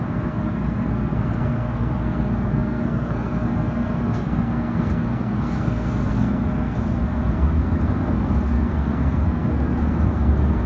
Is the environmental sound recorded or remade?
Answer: remade